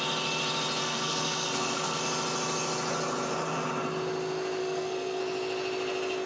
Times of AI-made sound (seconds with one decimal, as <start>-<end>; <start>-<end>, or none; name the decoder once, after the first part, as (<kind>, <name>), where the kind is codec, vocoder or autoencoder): 0.8-2.0 (codec, SNAC); 4.6-5.2